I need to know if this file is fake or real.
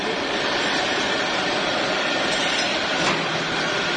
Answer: real